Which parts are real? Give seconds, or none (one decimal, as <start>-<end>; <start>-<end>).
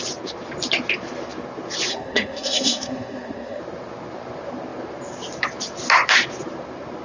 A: 0.0-1.9; 3.6-7.0